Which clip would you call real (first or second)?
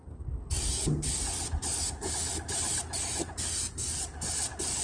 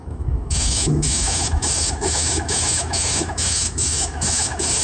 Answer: first